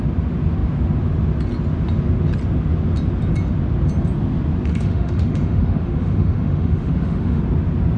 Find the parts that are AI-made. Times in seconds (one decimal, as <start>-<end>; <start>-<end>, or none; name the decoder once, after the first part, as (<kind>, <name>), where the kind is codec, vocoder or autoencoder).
4.7-7.4 (autoencoder, DAC-VAE)